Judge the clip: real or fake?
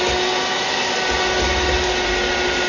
real